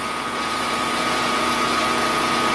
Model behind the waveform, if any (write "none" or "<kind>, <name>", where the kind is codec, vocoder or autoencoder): vocoder, Vocos